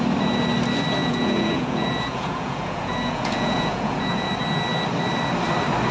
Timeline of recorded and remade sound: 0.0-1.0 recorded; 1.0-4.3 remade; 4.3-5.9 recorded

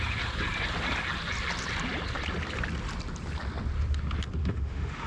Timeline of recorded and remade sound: 0.0-4.4 recorded; 4.4-5.1 remade

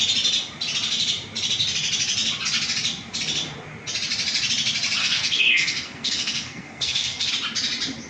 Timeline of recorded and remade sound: 0.0-5.0 recorded; 5.0-7.3 remade; 7.3-8.1 recorded

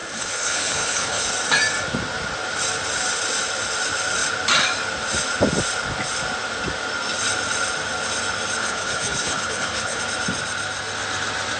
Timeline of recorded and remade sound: 0.0-1.3 remade; 1.3-8.6 recorded; 8.6-10.0 remade; 10.0-11.6 recorded

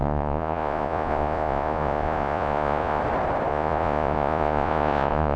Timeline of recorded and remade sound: 0.0-3.0 remade; 3.0-3.5 recorded; 3.5-5.4 remade